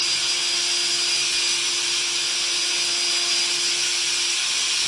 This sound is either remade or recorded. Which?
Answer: recorded